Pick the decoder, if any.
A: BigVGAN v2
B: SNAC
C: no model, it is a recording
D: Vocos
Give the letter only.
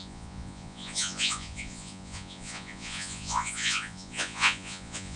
D